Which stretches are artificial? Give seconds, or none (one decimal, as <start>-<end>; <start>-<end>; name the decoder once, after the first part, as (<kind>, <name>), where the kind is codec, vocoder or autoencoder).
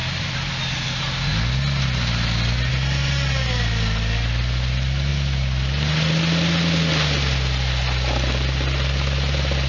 0.0-0.5 (vocoder, BigVGAN v2)